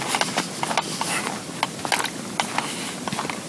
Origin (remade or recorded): recorded